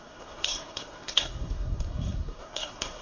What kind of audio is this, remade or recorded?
remade